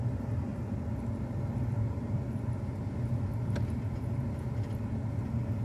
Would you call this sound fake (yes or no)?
no